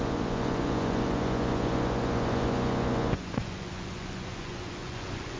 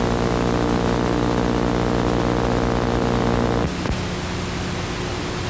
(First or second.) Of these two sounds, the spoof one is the first